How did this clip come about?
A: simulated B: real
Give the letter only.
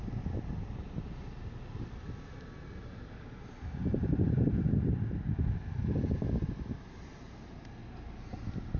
B